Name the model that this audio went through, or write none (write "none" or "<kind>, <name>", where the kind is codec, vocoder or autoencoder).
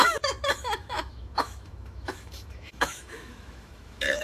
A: autoencoder, DAC-VAE